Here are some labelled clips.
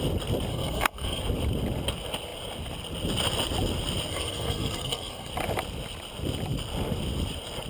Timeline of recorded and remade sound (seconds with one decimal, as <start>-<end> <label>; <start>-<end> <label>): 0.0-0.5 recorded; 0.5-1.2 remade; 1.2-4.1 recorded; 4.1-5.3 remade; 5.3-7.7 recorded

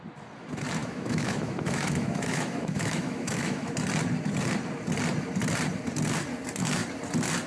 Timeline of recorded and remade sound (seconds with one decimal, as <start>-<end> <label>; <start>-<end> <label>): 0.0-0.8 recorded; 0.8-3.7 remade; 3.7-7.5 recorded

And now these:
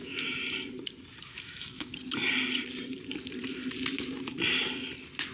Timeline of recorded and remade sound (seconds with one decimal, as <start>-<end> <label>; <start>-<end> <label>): 0.0-0.4 remade; 0.4-1.2 recorded; 1.2-1.9 remade; 1.9-5.3 recorded